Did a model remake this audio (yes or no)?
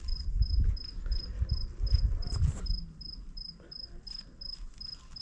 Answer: no